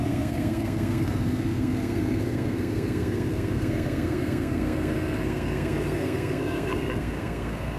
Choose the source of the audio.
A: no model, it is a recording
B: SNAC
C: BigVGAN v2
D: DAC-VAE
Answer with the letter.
B